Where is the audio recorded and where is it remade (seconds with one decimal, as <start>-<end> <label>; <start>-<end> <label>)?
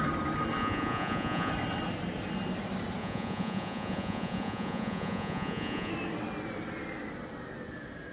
0.0-0.6 recorded; 0.6-1.5 remade; 1.5-3.0 recorded; 3.0-5.9 remade; 5.9-8.1 recorded